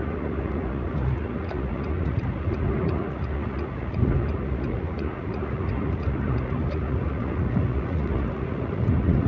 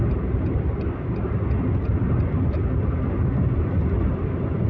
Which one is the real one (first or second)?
second